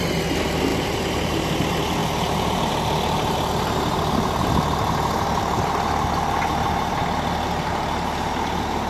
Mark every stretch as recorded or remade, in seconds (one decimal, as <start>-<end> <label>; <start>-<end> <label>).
0.0-0.7 recorded; 0.7-1.6 remade; 1.6-2.0 recorded; 2.0-2.7 remade; 2.7-8.9 recorded